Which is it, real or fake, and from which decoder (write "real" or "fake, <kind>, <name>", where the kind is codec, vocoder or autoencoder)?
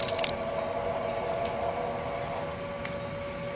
real